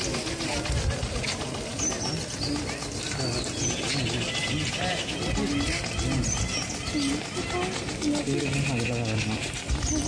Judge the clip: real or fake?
real